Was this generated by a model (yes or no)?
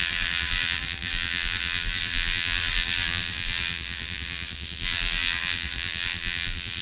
yes